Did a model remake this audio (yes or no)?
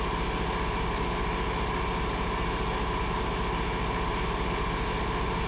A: no